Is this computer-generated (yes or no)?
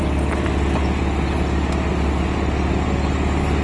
no